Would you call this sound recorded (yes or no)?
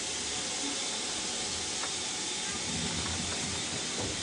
yes